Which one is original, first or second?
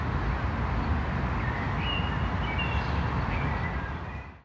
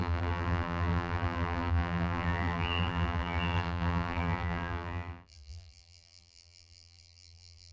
first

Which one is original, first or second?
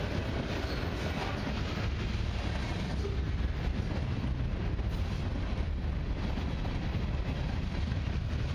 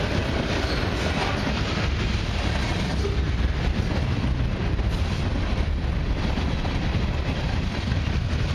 first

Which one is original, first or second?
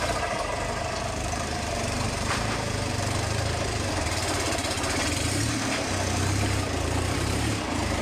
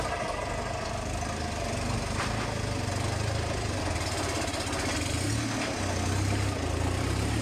second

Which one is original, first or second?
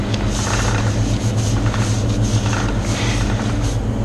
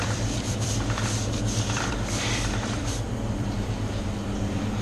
first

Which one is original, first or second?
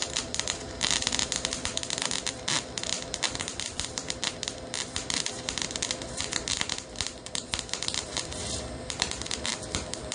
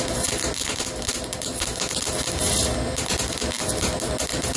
second